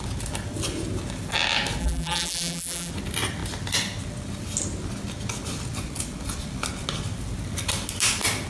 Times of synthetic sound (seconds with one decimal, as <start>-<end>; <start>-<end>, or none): 1.8-2.9